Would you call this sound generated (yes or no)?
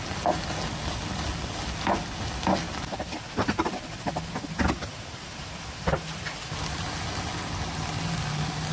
no